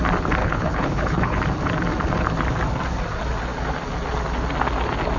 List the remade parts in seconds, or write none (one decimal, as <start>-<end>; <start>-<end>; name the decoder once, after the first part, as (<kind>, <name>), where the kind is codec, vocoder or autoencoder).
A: 0.4-1.4 (codec, HILCodec)